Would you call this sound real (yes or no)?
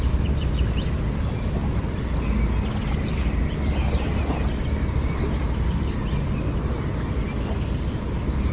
yes